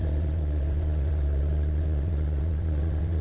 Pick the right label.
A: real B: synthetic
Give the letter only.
B